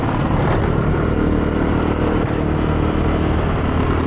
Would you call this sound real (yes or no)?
yes